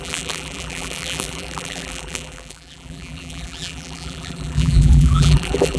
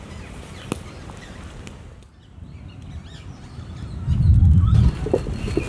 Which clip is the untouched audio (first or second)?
second